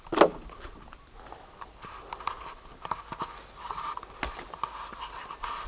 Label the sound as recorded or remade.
recorded